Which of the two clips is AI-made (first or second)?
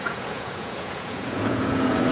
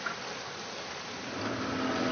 first